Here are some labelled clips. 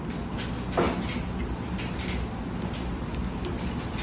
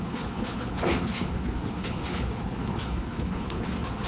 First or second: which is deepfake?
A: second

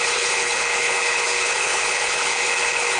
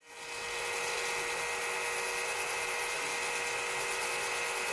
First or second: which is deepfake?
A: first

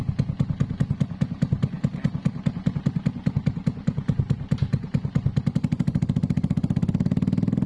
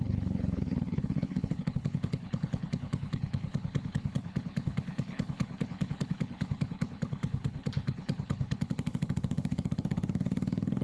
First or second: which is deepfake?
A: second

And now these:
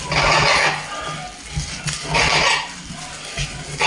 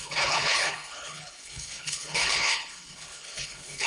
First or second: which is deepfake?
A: second